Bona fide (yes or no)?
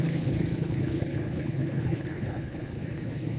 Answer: no